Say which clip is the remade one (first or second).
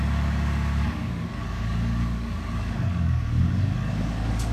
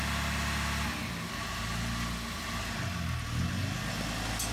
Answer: first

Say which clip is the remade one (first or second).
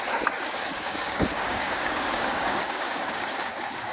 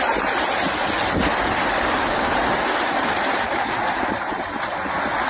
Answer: first